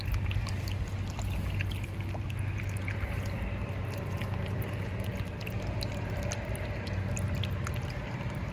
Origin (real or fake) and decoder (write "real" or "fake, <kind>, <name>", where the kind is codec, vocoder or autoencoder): real